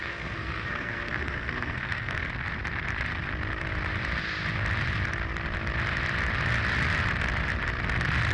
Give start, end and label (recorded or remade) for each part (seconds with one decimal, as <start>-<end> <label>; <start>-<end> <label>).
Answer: 0.0-2.3 remade; 2.3-8.3 recorded